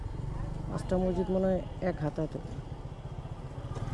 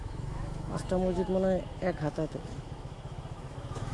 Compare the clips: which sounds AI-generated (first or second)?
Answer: second